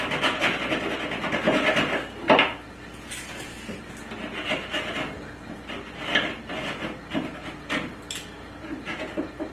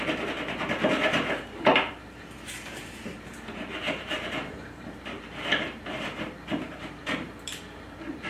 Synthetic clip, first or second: second